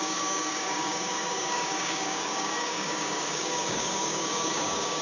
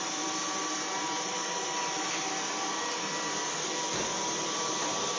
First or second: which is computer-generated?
first